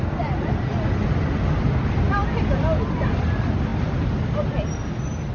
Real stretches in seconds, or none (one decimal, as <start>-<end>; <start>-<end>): 0.0-5.3